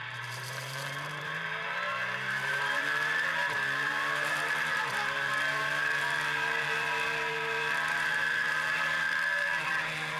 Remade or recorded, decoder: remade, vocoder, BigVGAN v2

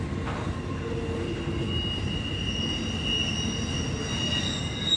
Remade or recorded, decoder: recorded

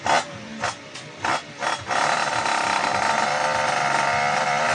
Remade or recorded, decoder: recorded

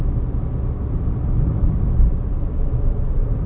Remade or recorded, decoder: recorded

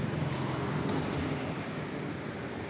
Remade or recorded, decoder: recorded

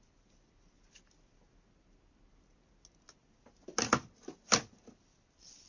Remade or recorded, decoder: recorded